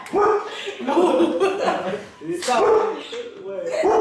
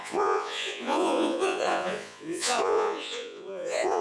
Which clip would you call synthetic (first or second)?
second